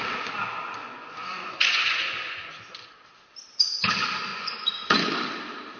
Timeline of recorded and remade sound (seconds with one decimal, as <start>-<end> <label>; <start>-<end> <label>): 0.0-0.8 recorded; 0.8-2.5 remade; 2.5-4.3 recorded; 4.3-5.1 remade; 5.1-5.8 recorded